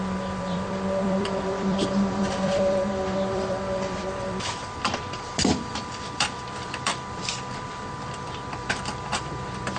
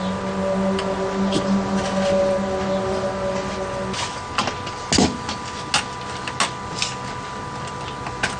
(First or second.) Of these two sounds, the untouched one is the second